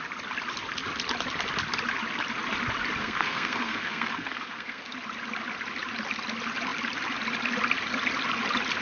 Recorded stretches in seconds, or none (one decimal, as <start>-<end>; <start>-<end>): 0.0-3.0; 4.9-8.8

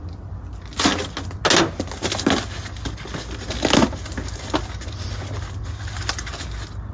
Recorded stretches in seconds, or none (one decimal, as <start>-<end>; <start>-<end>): 0.0-6.9

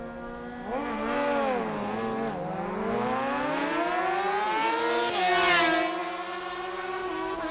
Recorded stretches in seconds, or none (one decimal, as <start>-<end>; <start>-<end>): 0.0-7.5

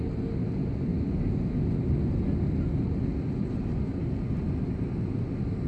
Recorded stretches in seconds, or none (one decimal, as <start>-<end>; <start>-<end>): 0.0-3.1; 4.3-5.7

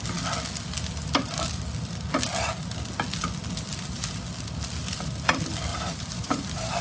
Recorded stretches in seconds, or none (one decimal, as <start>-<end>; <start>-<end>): 0.0-5.7